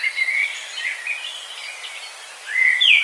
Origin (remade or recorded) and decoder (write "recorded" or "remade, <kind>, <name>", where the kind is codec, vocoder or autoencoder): recorded